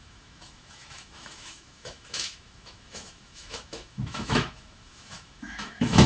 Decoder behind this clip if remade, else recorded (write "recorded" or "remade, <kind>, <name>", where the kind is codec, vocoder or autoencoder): remade, autoencoder, DAC-VAE